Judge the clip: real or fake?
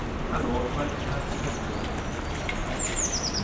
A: real